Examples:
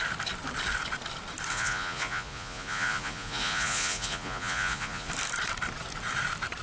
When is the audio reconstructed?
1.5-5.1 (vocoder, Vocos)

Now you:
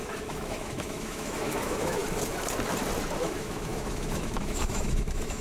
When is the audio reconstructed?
0.0-2.0 (autoencoder, DAC-VAE); 3.2-5.4